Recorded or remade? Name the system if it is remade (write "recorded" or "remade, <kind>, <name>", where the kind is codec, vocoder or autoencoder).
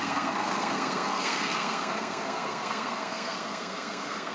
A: remade, codec, SNAC